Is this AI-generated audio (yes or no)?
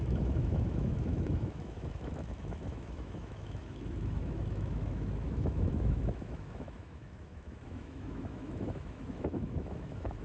yes